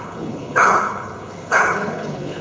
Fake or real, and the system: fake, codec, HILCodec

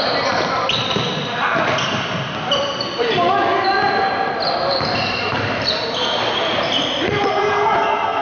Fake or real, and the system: real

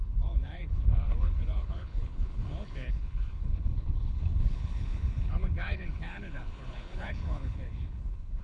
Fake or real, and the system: fake, codec, HILCodec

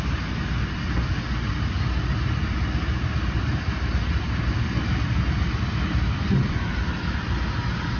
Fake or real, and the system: real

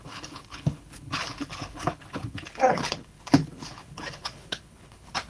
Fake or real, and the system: fake, codec, HILCodec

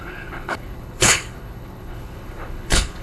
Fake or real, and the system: fake, codec, HILCodec